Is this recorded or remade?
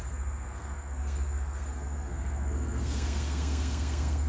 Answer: remade